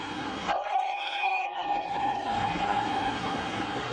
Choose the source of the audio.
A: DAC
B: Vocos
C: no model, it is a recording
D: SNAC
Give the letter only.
D